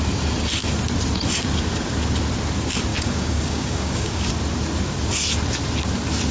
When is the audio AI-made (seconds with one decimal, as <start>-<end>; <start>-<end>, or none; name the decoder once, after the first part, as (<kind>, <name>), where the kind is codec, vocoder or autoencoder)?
2.9-4.3 (codec, DAC)